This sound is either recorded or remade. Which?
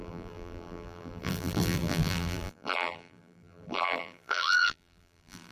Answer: remade